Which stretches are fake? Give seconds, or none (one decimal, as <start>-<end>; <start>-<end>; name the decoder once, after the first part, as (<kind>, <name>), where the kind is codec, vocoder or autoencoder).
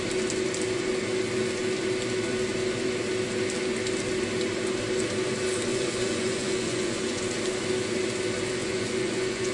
5.7-7.2 (vocoder, Vocos); 8.6-9.5